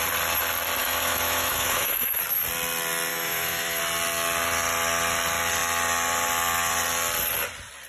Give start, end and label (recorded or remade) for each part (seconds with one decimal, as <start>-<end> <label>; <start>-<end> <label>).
0.0-0.8 recorded; 0.8-2.2 remade; 2.2-3.1 recorded; 3.1-3.8 remade; 3.8-7.9 recorded